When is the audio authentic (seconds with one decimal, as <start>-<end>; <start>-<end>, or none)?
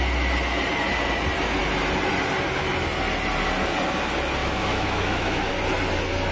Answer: 0.0-4.4; 5.5-6.3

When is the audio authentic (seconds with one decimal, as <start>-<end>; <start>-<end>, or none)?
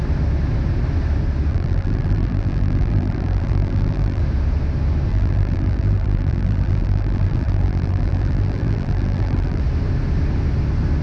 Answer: 0.0-1.5; 4.2-5.1; 9.6-11.0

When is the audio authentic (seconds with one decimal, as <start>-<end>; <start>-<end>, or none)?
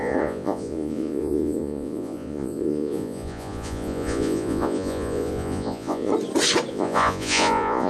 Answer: 6.1-6.7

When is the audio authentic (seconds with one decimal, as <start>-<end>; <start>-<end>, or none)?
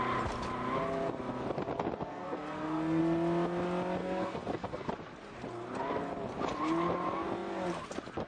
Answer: 0.0-2.1; 3.0-4.0; 4.9-8.3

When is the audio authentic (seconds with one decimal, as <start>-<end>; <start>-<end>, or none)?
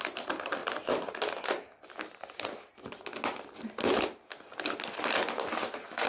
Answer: 0.0-0.6; 1.1-6.1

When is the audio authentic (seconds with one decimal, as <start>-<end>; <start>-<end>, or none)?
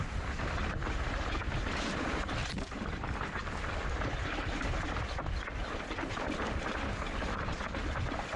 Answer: 2.4-5.6